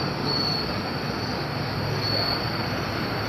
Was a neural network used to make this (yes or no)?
no